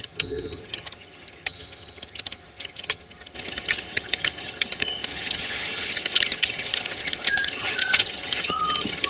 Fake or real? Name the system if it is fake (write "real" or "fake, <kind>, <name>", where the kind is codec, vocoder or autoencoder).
fake, vocoder, HiFi-GAN